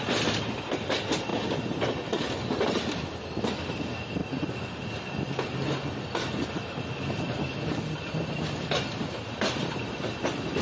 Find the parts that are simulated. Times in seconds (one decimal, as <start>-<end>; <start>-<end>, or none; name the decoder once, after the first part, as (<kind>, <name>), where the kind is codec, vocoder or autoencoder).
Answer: none